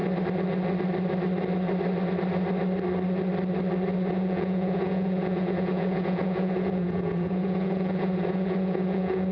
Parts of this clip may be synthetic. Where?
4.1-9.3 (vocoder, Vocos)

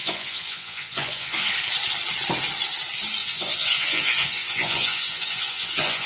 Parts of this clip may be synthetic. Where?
0.0-1.5 (vocoder, Vocos); 3.2-6.1

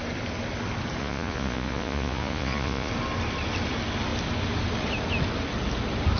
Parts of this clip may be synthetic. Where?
1.0-2.9 (vocoder, Vocos)

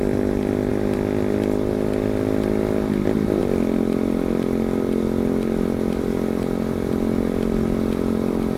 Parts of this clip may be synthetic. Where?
none

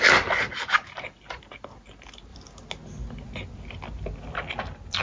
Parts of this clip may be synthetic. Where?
none

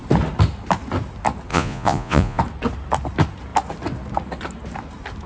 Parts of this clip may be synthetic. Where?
1.5-2.4 (vocoder, Vocos)